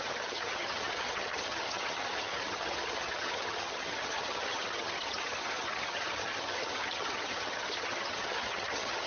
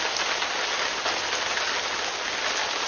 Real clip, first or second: second